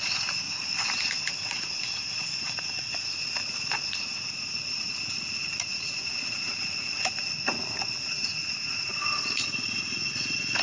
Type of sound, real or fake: fake